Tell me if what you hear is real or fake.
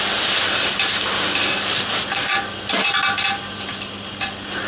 real